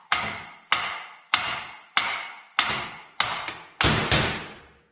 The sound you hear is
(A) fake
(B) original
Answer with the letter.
B